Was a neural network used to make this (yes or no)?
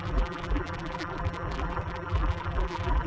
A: yes